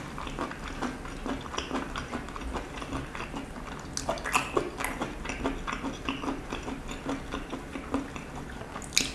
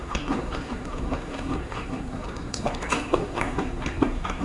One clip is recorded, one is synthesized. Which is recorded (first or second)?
first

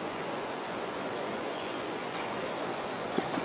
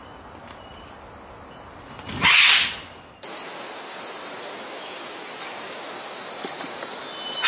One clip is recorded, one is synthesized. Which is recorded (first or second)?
second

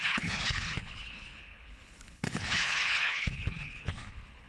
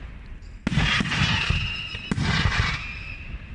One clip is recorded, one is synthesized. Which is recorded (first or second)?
second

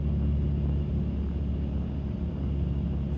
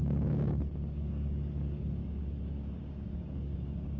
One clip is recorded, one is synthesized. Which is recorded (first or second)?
first